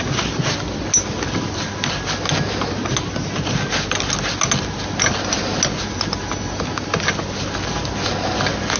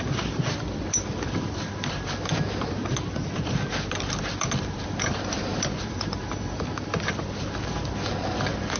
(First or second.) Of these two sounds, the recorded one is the first